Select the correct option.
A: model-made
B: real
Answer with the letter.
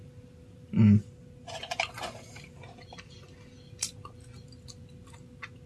B